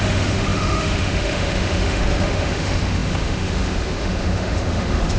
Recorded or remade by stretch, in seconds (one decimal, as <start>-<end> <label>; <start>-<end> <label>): 0.0-5.2 remade